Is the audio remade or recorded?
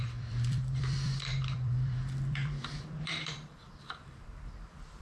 remade